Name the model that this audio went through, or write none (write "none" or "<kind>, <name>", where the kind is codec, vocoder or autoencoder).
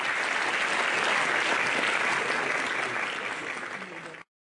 none